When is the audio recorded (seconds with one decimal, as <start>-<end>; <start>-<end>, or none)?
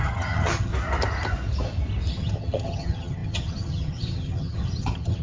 0.7-2.1